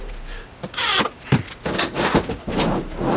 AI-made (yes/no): no